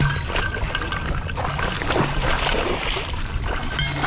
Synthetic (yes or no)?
no